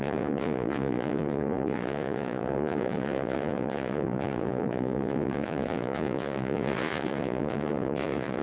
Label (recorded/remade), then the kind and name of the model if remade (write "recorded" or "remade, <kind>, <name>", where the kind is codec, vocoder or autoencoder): remade, vocoder, Vocos